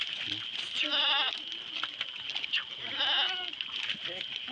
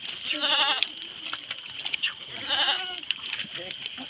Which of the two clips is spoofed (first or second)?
second